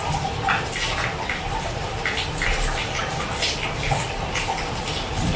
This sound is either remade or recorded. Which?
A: recorded